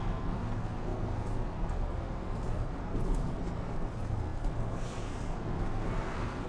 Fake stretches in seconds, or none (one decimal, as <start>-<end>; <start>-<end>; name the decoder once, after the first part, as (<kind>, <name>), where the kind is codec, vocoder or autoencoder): 0.0-6.5 (codec, SNAC)